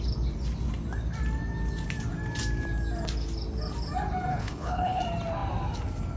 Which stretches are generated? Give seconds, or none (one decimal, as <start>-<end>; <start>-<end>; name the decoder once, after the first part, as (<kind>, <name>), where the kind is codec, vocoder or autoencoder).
4.3-5.0 (codec, HILCodec)